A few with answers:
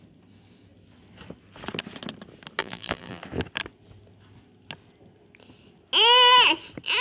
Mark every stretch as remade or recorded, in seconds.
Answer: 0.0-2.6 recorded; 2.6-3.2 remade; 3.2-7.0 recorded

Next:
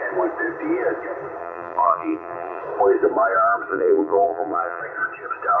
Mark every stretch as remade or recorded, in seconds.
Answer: 0.0-1.4 recorded; 1.4-2.6 remade; 2.6-3.7 recorded; 3.7-4.8 remade; 4.8-5.6 recorded